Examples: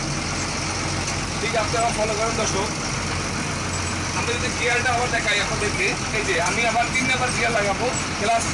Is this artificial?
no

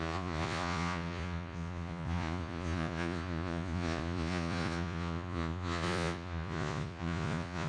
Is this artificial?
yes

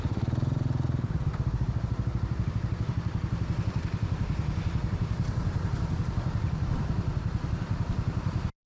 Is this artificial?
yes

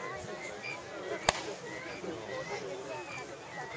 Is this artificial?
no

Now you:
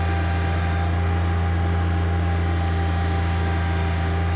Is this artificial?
no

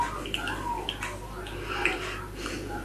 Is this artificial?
no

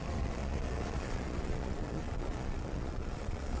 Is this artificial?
yes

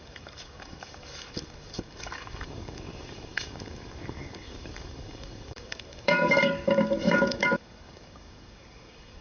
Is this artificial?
yes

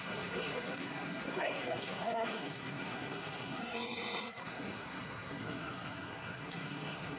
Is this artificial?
yes